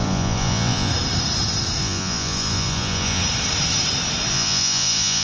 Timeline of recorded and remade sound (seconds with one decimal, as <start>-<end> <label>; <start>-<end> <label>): 0.0-0.9 remade; 0.9-1.8 recorded; 1.8-3.2 remade; 3.2-4.3 recorded; 4.3-5.2 remade